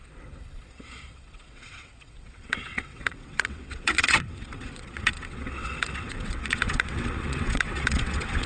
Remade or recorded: remade